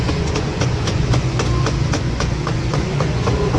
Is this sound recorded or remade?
remade